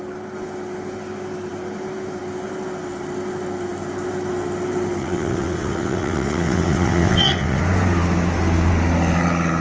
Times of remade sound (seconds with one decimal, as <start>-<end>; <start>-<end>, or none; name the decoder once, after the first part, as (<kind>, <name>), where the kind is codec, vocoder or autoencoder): 5.0-7.6 (vocoder, WaveNeXt)